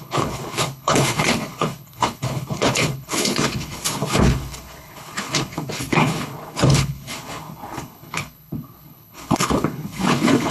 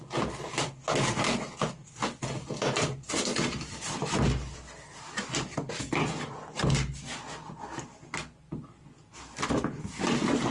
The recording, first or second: second